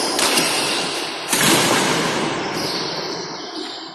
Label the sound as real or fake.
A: fake